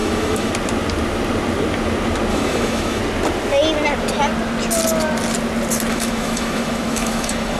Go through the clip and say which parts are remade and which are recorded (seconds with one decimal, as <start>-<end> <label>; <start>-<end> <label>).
0.0-0.5 remade; 0.5-2.3 recorded; 2.3-3.0 remade; 3.0-5.9 recorded; 5.9-7.6 remade